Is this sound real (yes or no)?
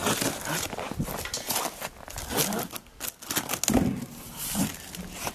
yes